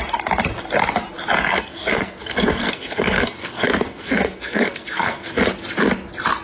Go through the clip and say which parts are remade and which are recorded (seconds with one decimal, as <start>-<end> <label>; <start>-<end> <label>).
0.0-1.5 recorded; 1.5-5.3 remade; 5.3-6.4 recorded